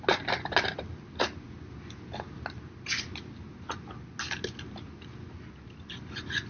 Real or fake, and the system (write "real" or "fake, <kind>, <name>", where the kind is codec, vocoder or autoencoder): real